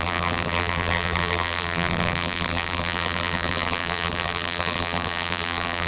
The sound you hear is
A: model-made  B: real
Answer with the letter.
A